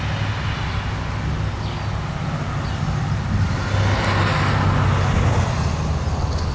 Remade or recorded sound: recorded